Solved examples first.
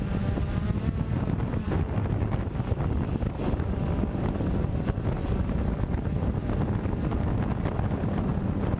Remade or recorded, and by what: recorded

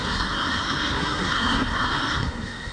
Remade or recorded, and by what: remade, codec, SNAC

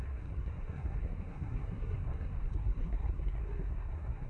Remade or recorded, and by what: remade, codec, SNAC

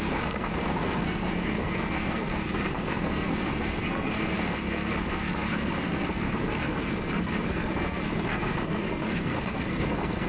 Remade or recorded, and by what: remade, codec, SNAC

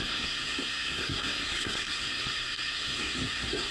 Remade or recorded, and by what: remade, codec, SNAC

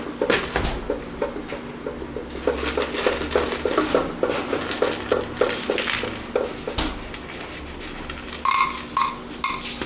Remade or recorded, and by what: recorded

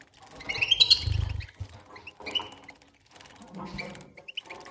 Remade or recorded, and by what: recorded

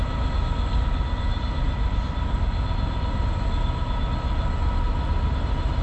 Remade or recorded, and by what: recorded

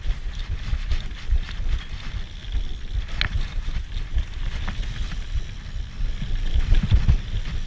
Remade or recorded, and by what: recorded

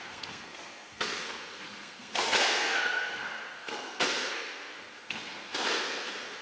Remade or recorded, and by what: remade, codec, SNAC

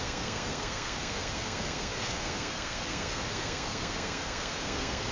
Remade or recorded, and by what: remade, codec, SNAC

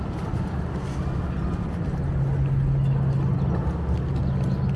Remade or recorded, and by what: recorded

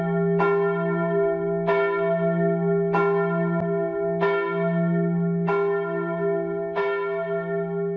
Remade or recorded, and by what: recorded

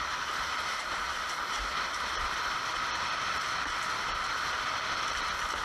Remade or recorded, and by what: recorded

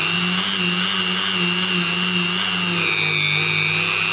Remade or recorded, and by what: recorded